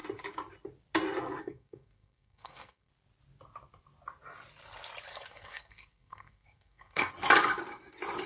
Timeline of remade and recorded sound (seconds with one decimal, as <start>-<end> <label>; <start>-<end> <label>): 0.0-1.4 recorded; 1.4-2.9 remade; 2.9-5.1 recorded; 5.1-7.1 remade; 7.1-8.3 recorded